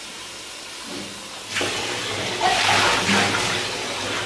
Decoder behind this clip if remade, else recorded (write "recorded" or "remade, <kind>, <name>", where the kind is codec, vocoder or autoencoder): recorded